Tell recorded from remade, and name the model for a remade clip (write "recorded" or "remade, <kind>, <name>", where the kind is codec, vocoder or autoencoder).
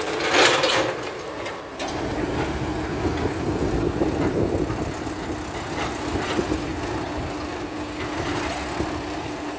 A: recorded